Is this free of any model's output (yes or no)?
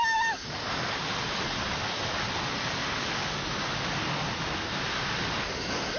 yes